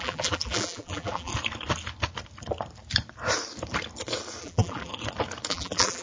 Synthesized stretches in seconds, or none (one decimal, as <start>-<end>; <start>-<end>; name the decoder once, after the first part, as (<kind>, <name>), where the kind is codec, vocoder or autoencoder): 0.0-1.3 (vocoder, BigVGAN v2); 4.4-4.9; 5.5-6.0